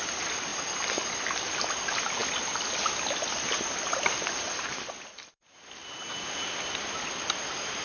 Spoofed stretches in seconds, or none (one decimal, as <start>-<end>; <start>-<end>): none